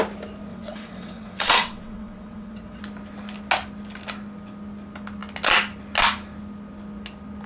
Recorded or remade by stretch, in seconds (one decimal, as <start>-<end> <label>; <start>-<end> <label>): 0.0-0.5 recorded; 0.5-2.8 remade; 2.8-7.5 recorded